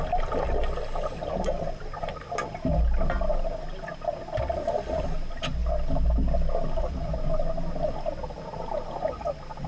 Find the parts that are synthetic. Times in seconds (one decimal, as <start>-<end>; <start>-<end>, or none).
none